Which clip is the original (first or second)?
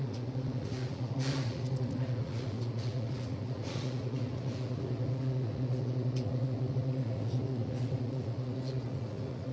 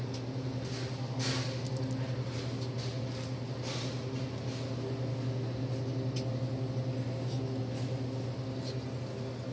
second